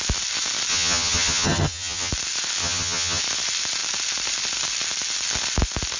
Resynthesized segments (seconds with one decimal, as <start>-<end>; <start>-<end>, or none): 0.7-2.1; 2.6-3.2